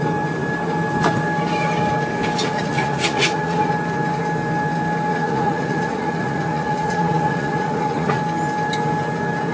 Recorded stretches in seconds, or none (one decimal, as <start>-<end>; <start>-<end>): 0.0-2.4; 3.7-5.1; 8.2-9.5